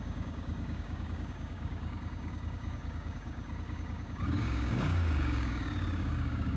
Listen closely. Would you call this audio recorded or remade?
remade